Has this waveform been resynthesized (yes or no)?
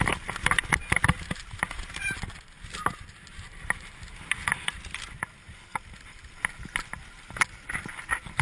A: no